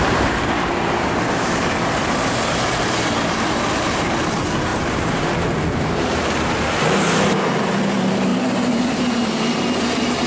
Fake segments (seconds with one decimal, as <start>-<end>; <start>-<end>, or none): 0.0-10.3